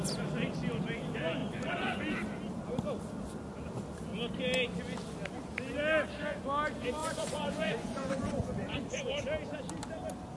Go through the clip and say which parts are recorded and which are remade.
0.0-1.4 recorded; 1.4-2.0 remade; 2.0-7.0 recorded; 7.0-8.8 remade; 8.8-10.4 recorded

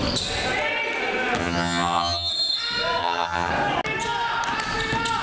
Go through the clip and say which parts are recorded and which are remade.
0.0-1.4 recorded; 1.4-2.3 remade; 2.3-3.0 recorded; 3.0-3.5 remade; 3.5-5.2 recorded

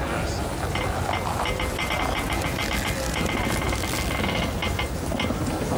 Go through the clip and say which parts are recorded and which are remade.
0.0-5.8 recorded